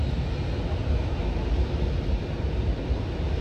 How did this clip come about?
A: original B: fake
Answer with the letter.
A